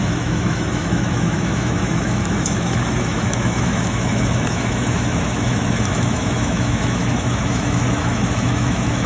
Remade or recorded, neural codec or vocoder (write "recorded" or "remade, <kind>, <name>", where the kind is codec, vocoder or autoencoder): remade, autoencoder, DAC-VAE